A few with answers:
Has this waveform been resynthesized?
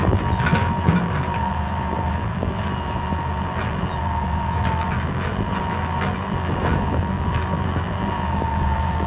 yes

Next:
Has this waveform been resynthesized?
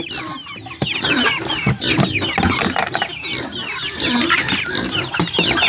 no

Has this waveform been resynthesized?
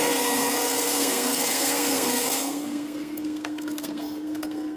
yes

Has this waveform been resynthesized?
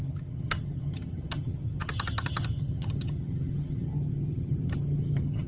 yes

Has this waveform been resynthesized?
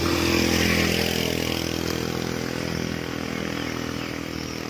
no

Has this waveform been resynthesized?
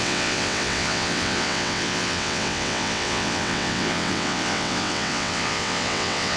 yes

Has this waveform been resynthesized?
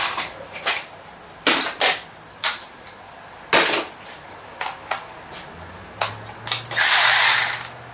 no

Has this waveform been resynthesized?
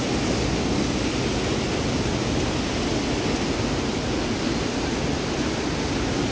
no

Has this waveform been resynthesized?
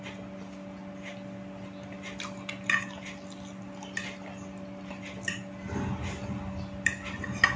no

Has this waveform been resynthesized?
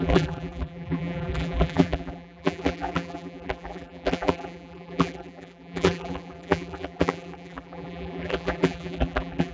yes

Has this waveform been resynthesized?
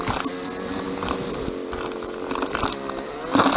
no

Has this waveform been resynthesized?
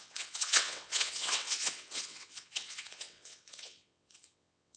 yes